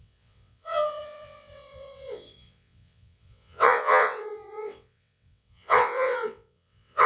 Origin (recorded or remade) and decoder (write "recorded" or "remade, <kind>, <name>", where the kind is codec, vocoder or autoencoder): remade, vocoder, WaveNeXt